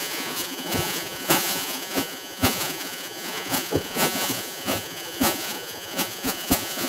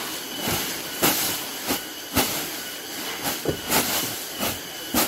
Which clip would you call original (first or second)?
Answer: second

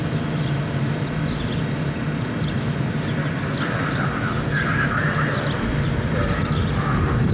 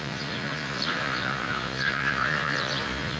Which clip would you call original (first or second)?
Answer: first